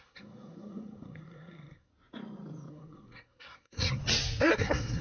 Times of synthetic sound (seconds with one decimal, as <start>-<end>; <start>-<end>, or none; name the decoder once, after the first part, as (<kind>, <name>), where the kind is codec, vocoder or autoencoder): 0.0-1.9 (codec, SNAC); 2.7-4.0; 4.5-5.0